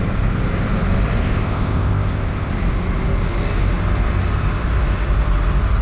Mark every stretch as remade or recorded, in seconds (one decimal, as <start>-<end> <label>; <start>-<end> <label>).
0.0-1.2 recorded; 1.2-2.5 remade; 2.5-5.8 recorded